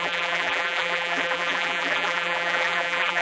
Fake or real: fake